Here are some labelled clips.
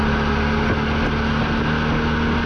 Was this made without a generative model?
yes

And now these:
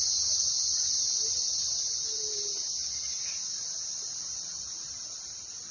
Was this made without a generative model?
yes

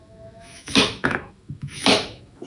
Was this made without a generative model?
no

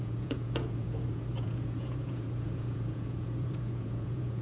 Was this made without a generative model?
no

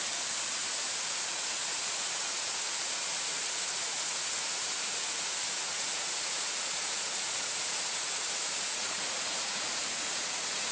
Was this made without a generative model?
no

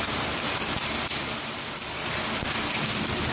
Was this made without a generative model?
yes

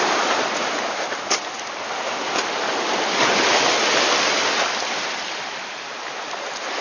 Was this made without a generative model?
yes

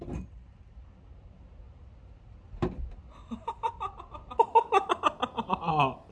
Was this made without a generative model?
yes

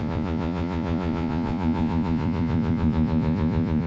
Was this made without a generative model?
no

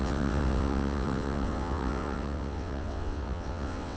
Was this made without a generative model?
no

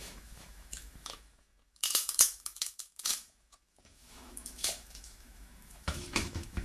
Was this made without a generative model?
no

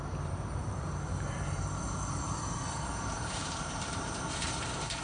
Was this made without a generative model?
no